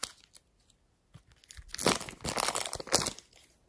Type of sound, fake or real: real